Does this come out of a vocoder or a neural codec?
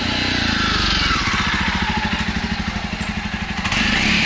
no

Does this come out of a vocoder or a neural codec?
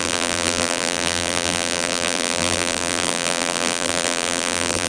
yes